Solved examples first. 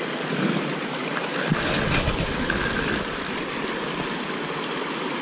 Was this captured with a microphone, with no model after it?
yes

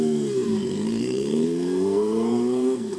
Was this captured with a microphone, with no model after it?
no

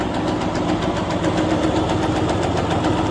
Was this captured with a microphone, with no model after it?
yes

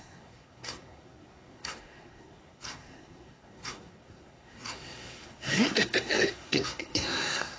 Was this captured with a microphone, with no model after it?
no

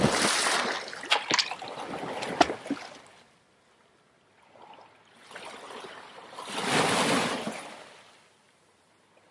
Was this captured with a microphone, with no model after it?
yes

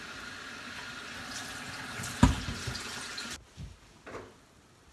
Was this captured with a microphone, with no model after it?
yes